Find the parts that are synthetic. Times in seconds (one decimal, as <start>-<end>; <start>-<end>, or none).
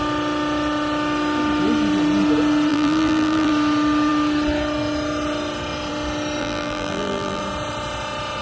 2.7-3.5; 6.4-7.4